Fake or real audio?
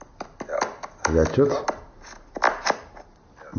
real